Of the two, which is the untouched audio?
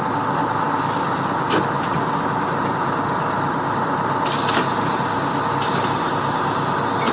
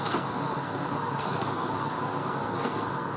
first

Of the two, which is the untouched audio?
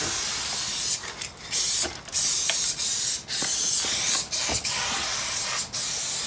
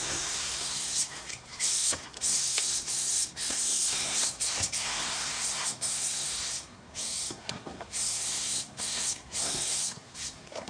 first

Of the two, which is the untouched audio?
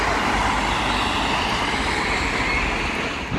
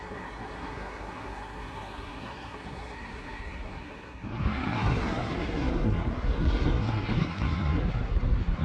first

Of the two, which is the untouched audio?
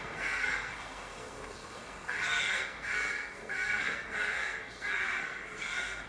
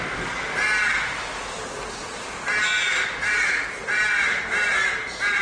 second